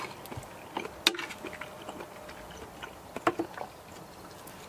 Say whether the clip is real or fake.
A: real